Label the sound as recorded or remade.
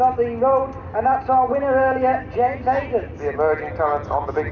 recorded